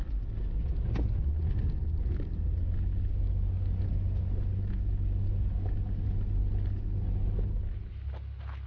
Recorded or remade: recorded